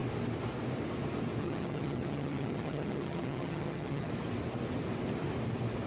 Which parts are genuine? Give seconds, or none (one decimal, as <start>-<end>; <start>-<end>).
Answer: 0.0-1.4; 4.1-5.9